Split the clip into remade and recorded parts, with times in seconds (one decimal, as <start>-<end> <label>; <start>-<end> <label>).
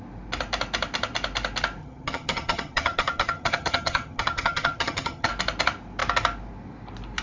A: 0.0-1.8 recorded; 1.8-5.3 remade; 5.3-7.2 recorded